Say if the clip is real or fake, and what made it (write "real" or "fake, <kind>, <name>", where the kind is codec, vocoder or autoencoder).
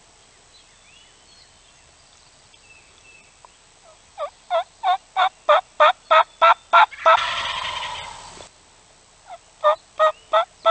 real